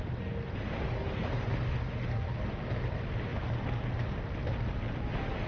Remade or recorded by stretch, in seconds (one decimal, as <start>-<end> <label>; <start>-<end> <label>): 0.0-5.5 recorded